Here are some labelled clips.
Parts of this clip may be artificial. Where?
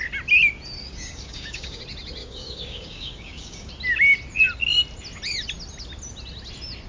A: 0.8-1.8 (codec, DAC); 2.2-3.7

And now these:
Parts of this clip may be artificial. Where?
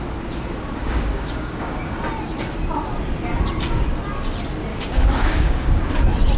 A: 0.8-1.9 (codec, DAC); 4.7-5.8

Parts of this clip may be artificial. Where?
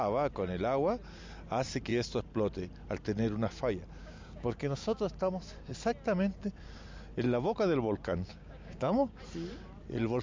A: 4.0-5.0 (codec, DAC); 8.3-9.2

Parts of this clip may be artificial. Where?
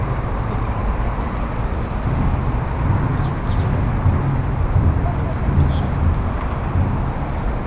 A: none